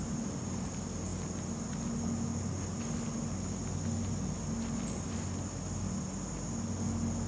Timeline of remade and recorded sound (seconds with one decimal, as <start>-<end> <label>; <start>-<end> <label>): 0.0-7.3 recorded